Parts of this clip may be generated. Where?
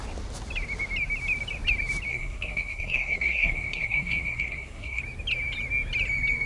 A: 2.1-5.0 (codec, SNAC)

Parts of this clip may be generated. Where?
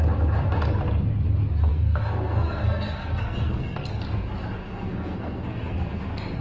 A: 1.7-3.9 (codec, SNAC); 4.6-6.0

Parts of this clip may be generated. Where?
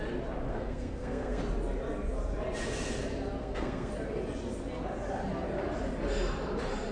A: 0.5-1.4 (codec, SNAC); 3.4-3.9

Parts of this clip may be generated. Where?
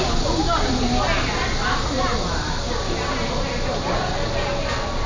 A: none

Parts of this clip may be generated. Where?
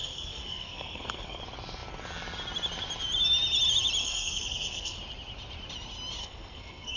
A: 0.0-1.4 (codec, SNAC); 4.0-5.0; 6.2-7.0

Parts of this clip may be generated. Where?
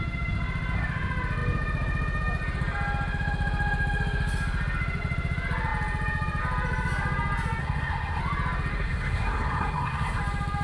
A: 7.6-8.2 (codec, SNAC); 8.7-10.2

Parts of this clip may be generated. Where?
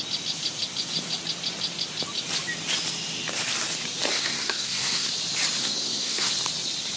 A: 4.1-5.1 (codec, SNAC); 5.6-6.3